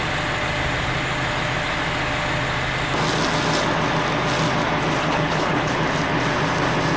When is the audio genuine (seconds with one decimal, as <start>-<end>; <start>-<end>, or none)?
0.0-5.0; 5.7-7.0